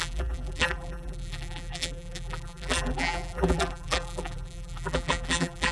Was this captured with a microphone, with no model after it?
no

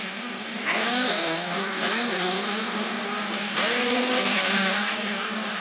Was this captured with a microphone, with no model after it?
no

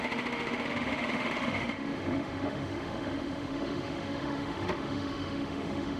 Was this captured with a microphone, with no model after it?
no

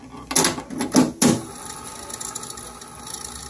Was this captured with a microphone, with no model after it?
yes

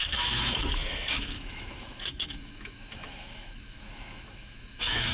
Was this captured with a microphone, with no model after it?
no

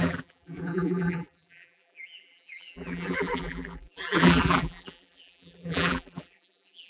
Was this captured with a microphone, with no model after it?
no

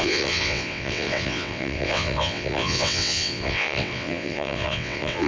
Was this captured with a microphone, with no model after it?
no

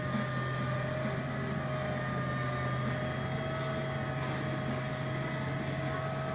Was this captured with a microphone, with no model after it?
yes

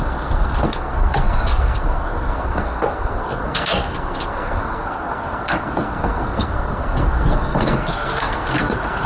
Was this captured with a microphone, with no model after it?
no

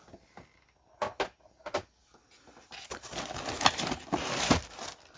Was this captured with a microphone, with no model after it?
yes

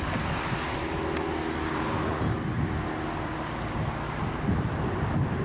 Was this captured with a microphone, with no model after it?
yes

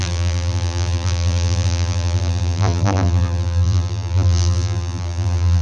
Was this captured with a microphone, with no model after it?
no